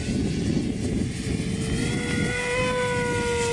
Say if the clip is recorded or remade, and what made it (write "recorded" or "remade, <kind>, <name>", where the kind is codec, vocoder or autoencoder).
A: recorded